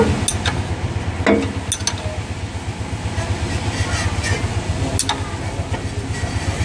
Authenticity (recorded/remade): recorded